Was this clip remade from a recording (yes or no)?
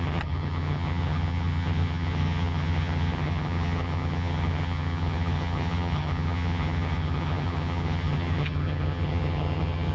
yes